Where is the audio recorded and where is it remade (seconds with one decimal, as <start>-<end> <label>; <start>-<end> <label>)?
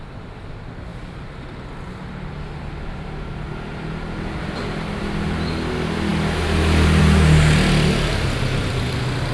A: 0.0-9.3 recorded